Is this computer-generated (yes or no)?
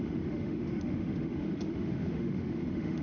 yes